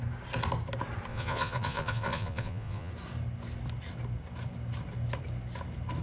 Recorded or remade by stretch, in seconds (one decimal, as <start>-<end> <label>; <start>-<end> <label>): 0.0-1.1 recorded; 1.1-2.9 remade; 2.9-6.0 recorded